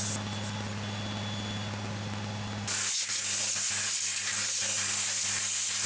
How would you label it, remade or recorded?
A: recorded